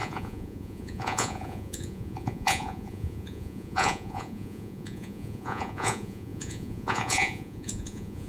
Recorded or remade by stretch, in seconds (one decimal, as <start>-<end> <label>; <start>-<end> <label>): 0.0-8.3 remade